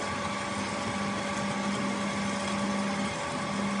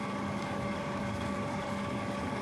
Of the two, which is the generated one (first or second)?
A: second